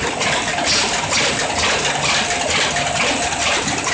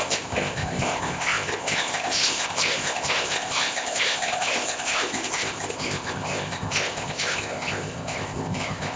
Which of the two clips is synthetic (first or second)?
second